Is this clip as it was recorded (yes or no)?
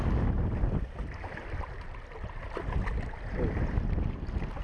yes